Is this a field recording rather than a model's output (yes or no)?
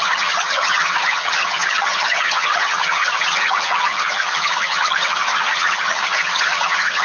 no